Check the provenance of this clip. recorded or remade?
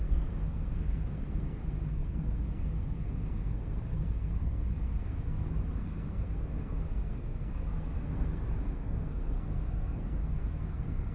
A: remade